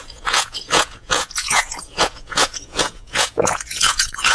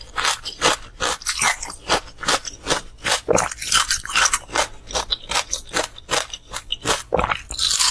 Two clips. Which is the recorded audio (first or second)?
second